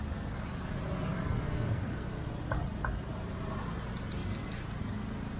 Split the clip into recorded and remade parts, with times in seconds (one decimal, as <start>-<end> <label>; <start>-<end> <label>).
0.0-1.4 recorded; 1.4-2.3 remade; 2.3-5.4 recorded